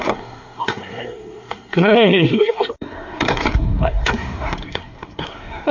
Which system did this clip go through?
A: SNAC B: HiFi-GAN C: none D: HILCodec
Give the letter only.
A